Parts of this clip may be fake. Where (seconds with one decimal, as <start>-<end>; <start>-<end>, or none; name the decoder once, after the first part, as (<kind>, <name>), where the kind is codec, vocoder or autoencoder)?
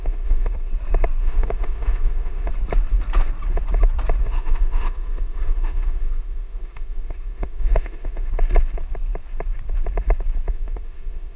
0.0-0.7 (autoencoder, DAC-VAE); 1.2-2.5; 4.2-8.3; 10.5-11.4